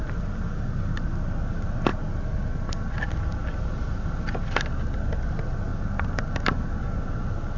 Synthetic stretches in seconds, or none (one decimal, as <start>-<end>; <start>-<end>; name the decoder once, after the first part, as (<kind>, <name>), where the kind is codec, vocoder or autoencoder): none